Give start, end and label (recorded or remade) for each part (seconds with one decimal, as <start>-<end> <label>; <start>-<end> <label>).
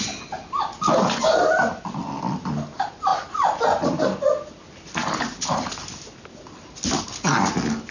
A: 0.0-7.9 recorded